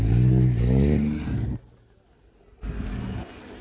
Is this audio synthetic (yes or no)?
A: no